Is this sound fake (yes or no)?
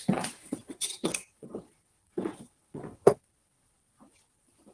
yes